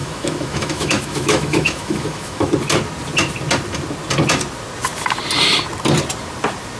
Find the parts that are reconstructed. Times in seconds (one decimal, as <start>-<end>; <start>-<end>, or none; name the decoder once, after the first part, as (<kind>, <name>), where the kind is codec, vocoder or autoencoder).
0.0-2.5 (autoencoder, DAC-VAE)